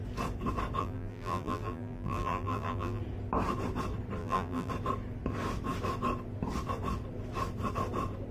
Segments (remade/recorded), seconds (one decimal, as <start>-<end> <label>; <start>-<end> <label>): 0.0-0.8 recorded; 0.8-3.0 remade; 3.0-4.2 recorded; 4.2-4.7 remade; 4.7-8.3 recorded